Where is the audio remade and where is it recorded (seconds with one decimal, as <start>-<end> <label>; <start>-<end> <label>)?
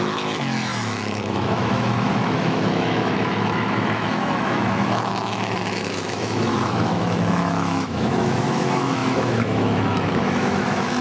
0.0-11.0 remade